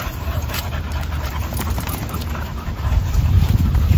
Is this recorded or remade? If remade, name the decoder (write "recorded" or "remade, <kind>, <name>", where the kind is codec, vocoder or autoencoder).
remade, vocoder, BigVGAN v2